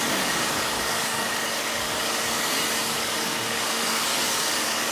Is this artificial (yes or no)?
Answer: yes